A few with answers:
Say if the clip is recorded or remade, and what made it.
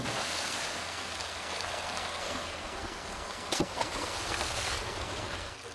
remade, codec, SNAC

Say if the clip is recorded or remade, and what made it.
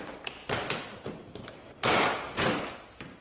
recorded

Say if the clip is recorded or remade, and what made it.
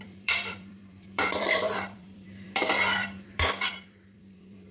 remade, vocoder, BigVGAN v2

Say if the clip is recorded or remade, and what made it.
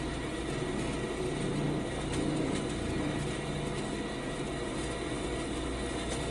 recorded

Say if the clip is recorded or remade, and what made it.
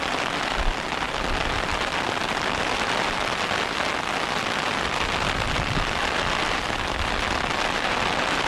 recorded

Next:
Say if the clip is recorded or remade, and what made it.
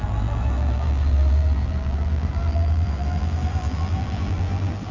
remade, vocoder, BigVGAN v2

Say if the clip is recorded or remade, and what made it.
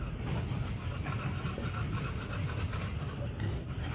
recorded